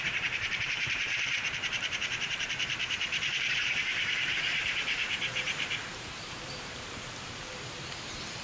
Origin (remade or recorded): remade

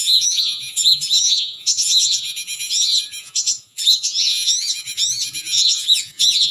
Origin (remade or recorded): remade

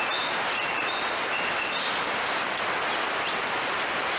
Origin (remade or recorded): recorded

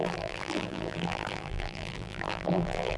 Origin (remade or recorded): remade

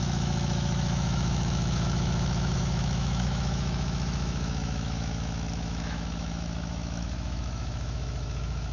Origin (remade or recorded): remade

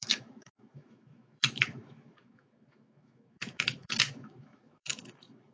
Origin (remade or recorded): remade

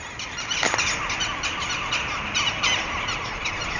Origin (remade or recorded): recorded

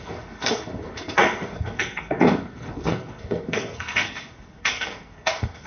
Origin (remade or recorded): remade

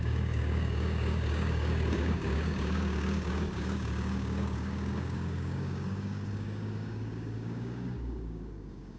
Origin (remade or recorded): remade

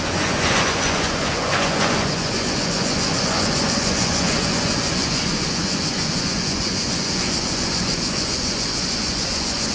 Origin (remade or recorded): remade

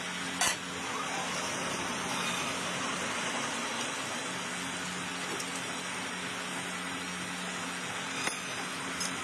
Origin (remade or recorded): recorded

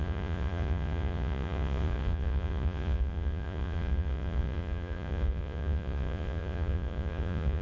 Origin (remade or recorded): remade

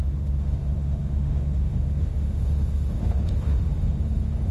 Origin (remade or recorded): remade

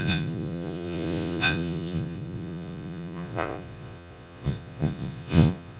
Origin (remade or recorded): remade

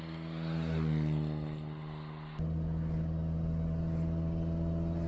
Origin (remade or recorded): recorded